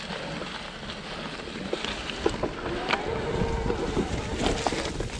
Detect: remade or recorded recorded